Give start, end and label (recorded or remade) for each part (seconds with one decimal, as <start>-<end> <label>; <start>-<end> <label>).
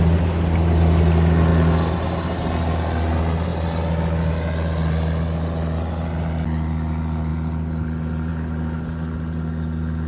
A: 0.0-10.1 recorded